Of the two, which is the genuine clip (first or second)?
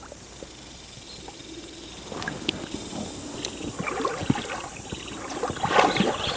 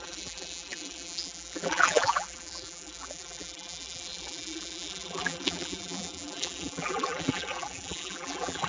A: first